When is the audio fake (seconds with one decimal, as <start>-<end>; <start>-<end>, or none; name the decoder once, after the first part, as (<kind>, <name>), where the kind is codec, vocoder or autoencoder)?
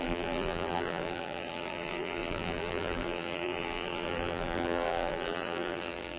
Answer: 0.0-6.2 (vocoder, BigVGAN v2)